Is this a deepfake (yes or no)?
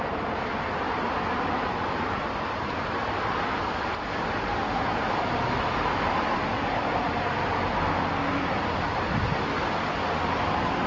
no